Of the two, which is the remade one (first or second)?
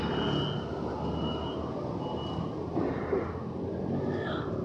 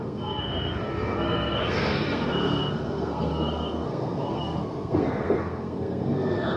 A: second